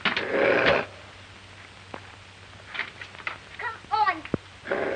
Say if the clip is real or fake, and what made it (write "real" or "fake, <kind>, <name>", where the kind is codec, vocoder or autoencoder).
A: real